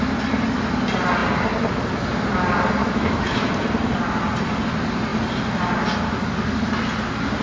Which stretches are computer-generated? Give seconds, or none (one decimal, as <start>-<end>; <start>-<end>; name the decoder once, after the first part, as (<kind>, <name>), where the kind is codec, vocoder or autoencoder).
2.8-3.5 (autoencoder, DAC-VAE)